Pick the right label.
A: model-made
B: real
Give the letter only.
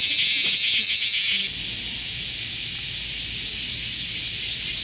B